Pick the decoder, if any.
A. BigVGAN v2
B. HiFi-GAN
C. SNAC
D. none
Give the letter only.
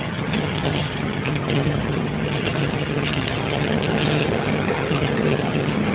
B